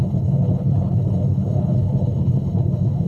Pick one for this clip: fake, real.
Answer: fake